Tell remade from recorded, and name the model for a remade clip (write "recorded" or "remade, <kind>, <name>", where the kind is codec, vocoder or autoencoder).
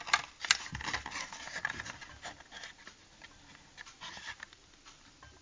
recorded